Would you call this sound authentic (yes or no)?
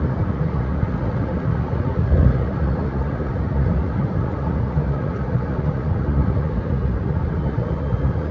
no